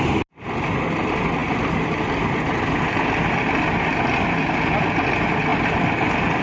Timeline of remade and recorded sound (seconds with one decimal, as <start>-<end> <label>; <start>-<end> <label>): 0.0-6.4 recorded